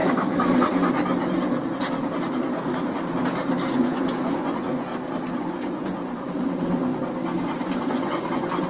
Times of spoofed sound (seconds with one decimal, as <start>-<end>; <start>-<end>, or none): 3.7-4.9; 5.4-7.0; 7.6-8.7